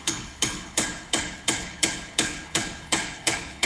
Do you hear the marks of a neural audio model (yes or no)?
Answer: yes